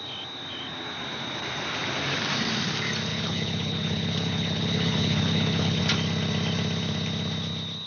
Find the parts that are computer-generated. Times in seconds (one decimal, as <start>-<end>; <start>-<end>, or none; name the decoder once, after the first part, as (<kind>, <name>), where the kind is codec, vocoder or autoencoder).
3.1-5.8 (codec, HILCodec)